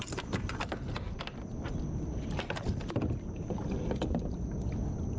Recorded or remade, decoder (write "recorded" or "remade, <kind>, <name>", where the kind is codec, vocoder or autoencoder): recorded